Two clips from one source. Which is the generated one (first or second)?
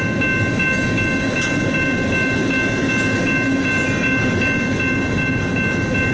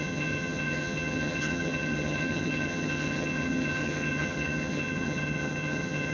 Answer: second